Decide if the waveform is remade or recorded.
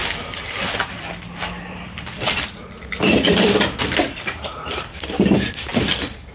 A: remade